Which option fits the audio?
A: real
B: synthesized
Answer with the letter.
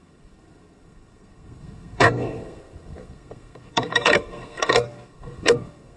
B